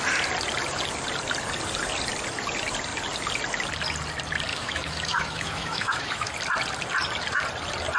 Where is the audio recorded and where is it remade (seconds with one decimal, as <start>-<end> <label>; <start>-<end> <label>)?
0.0-4.5 recorded; 4.5-6.3 remade; 6.3-8.0 recorded